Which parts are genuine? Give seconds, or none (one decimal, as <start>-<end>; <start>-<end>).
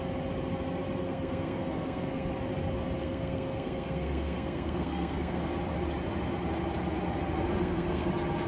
0.0-1.0; 2.3-3.0; 5.4-7.6; 8.1-8.5